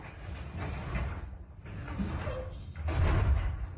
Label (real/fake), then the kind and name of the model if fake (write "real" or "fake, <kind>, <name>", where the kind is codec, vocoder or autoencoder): real